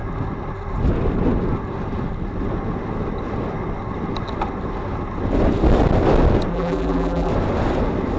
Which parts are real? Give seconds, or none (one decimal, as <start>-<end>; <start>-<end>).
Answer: 0.0-6.5; 7.3-8.2